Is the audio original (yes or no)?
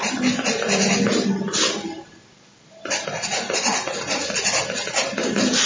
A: yes